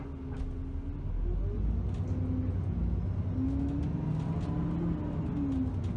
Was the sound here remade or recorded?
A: recorded